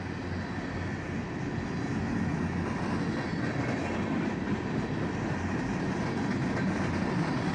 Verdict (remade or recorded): recorded